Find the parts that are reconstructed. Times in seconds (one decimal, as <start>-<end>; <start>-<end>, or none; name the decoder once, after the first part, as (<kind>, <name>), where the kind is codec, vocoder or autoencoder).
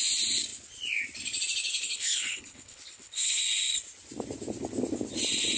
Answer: 1.7-3.4 (codec, HILCodec)